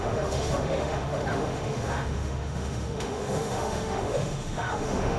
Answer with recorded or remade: remade